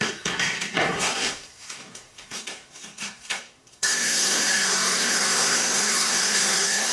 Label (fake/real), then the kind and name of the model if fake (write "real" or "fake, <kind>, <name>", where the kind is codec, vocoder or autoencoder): fake, codec, SNAC